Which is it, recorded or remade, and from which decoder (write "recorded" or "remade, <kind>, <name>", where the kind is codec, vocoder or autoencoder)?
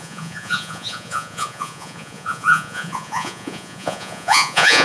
remade, vocoder, Vocos